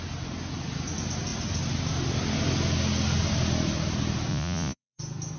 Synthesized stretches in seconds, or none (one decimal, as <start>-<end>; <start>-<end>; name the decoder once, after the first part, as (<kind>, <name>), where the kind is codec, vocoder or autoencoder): 4.3-5.0 (vocoder, Vocos)